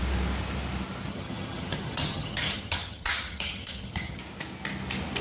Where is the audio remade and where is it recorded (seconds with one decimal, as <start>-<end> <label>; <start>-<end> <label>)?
0.0-1.1 recorded; 1.1-4.2 remade; 4.2-5.2 recorded